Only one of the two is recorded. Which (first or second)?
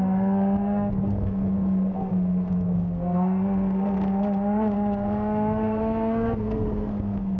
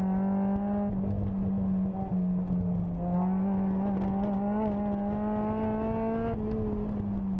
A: second